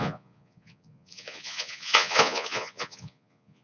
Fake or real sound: fake